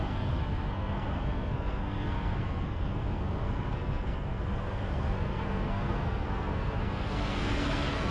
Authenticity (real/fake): fake